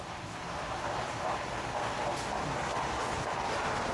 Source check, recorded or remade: recorded